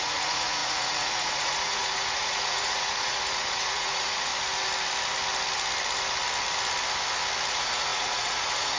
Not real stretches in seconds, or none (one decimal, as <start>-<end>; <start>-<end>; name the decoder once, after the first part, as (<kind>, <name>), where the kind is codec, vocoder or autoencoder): 0.0-4.3 (vocoder, Vocos); 7.5-8.8